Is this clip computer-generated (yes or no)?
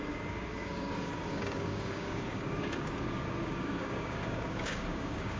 yes